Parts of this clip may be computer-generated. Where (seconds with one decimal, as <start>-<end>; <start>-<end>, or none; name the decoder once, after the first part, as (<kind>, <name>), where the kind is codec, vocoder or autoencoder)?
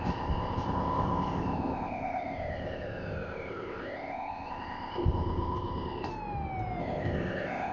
0.0-6.1 (codec, ZipCodec); 6.8-7.7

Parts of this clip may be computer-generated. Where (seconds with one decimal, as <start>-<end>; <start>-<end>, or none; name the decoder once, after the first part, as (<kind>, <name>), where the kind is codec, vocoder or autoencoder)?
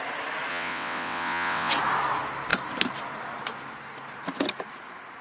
0.5-1.7 (vocoder, WaveNeXt)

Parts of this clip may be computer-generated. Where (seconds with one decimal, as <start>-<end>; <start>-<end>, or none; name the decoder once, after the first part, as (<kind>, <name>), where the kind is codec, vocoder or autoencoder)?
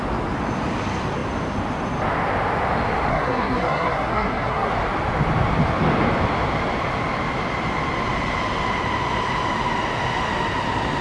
3.1-4.7 (codec, SNAC)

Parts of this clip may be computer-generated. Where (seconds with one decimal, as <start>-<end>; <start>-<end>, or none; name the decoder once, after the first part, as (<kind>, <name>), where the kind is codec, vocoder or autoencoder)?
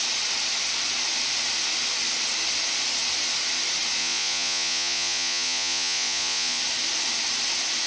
4.0-6.6 (vocoder, Vocos)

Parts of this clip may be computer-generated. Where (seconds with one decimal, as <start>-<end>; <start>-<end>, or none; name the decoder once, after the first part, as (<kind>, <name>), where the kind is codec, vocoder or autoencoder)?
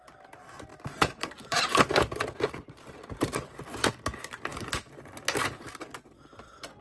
0.7-2.9 (vocoder, BigVGAN v2)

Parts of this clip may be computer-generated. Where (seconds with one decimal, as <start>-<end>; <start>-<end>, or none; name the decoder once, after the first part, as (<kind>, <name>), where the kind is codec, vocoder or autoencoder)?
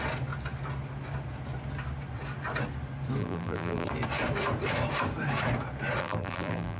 3.2-3.9 (vocoder, BigVGAN v2); 6.0-6.8